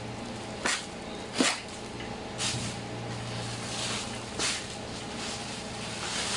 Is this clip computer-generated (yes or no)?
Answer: no